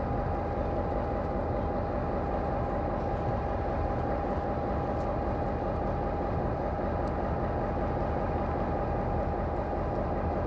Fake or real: real